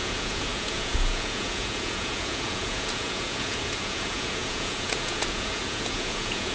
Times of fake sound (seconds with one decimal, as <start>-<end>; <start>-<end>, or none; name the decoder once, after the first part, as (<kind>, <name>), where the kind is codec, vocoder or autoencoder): 0.0-6.5 (vocoder, Vocos)